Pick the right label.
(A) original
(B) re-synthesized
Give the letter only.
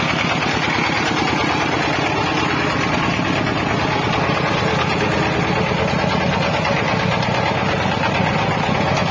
A